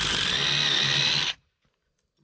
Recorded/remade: recorded